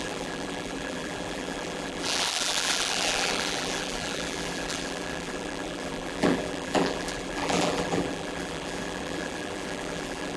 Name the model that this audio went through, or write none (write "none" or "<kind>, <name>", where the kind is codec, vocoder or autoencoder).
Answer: vocoder, BigVGAN v2